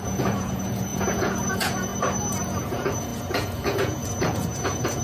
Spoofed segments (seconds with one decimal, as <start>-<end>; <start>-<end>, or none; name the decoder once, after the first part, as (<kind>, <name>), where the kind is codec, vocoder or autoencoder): 0.0-1.9 (vocoder, Vocos); 2.4-5.0

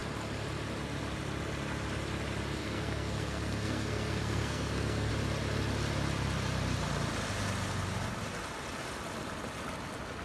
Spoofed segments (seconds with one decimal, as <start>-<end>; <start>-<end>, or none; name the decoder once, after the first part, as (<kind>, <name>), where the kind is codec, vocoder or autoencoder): 2.6-5.1 (codec, SNAC)

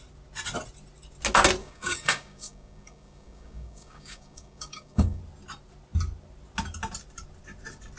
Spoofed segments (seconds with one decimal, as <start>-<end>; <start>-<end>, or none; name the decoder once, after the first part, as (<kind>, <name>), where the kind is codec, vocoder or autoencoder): 1.6-5.2 (codec, DAC)

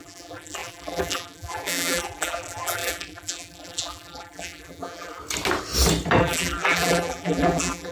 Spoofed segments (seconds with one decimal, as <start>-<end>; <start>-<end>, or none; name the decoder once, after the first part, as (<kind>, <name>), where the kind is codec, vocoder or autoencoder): 0.0-5.2 (vocoder, BigVGAN v2); 6.2-7.9

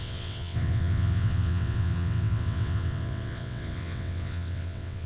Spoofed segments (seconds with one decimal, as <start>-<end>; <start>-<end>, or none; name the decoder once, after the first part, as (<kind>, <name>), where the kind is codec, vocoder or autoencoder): 0.0-5.1 (vocoder, WaveNeXt)